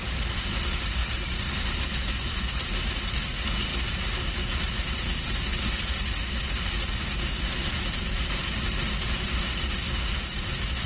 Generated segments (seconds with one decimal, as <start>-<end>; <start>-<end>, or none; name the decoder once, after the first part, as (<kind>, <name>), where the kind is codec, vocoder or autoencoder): 1.0-1.8 (vocoder, BigVGAN v2)